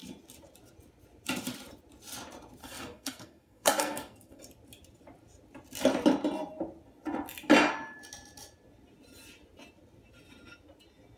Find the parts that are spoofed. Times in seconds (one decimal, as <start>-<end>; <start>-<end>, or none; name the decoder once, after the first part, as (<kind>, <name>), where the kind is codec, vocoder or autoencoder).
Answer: 2.6-4.4 (codec, SNAC)